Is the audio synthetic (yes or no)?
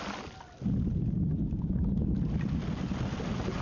no